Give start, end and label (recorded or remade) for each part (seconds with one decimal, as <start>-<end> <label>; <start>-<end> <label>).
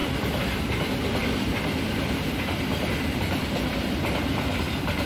0.0-0.6 remade; 0.6-1.2 recorded; 1.2-4.3 remade; 4.3-5.1 recorded